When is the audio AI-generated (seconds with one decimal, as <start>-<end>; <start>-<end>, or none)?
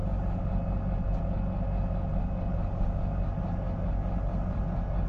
none